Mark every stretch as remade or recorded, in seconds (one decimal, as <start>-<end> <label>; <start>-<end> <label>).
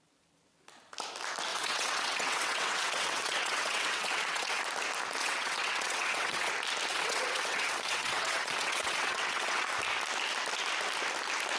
0.0-1.5 recorded; 1.5-4.6 remade; 4.6-5.2 recorded; 5.2-6.5 remade; 6.5-6.9 recorded; 6.9-9.7 remade; 9.7-11.6 recorded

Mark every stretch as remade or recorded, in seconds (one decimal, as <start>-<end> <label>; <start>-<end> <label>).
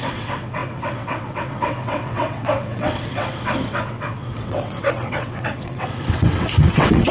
0.0-7.1 remade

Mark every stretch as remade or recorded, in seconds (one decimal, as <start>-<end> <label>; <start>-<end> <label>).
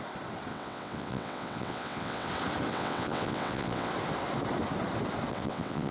0.0-0.5 recorded; 0.5-2.3 remade; 2.3-2.7 recorded; 2.7-3.9 remade; 3.9-5.3 recorded; 5.3-5.9 remade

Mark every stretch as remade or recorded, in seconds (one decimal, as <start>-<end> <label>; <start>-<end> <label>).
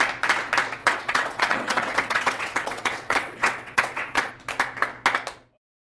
0.0-0.8 recorded; 0.8-4.3 remade; 4.3-5.9 recorded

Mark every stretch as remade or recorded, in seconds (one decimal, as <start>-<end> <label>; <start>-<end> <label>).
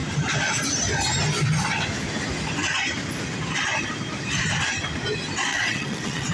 0.0-5.5 recorded; 5.5-6.3 remade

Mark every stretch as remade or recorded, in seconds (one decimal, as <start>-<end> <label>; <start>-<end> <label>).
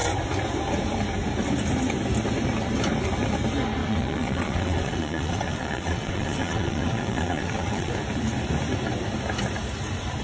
0.0-3.8 recorded; 3.8-7.9 remade; 7.9-10.2 recorded